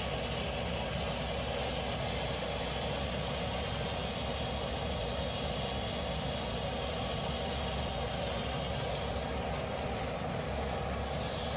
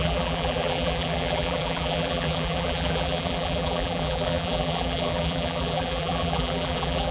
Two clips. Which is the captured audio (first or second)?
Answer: first